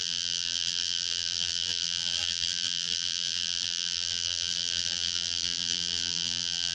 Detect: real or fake fake